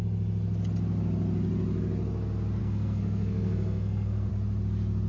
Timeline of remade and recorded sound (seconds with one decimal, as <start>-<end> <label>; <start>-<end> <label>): 0.0-2.6 recorded; 2.6-4.3 remade; 4.3-5.1 recorded

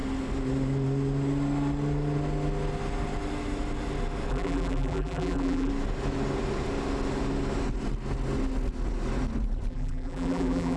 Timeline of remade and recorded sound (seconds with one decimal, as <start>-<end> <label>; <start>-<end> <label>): 0.0-4.3 recorded; 4.3-5.7 remade; 5.7-9.7 recorded; 9.7-10.8 remade

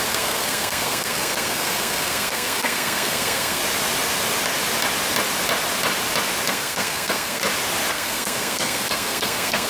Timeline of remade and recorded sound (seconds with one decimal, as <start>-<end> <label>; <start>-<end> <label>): 0.0-3.6 remade; 3.6-6.5 recorded; 6.5-7.4 remade; 7.4-7.9 recorded; 7.9-9.7 remade

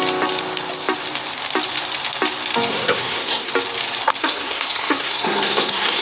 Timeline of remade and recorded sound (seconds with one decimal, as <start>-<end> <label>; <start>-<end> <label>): 0.0-2.7 recorded; 2.7-3.5 remade; 3.5-4.2 recorded; 4.2-6.0 remade

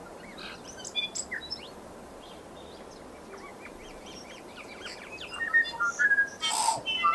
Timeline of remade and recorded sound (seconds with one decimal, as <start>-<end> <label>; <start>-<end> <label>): 0.0-2.4 remade; 2.4-3.5 recorded; 3.5-6.6 remade; 6.6-7.1 recorded

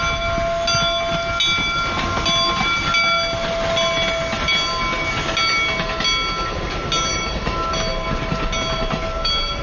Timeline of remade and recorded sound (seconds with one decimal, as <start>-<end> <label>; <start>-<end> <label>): 0.0-9.6 recorded

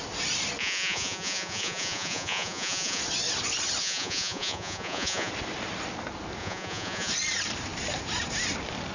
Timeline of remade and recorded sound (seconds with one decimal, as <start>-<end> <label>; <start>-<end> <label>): 0.0-0.6 recorded; 0.6-3.0 remade; 3.0-3.8 recorded; 3.8-5.3 remade; 5.3-6.4 recorded; 6.4-7.1 remade; 7.1-8.9 recorded